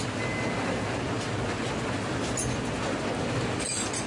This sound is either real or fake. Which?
real